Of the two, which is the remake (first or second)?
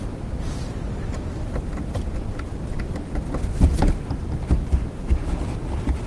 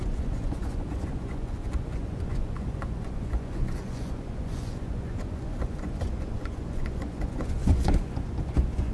second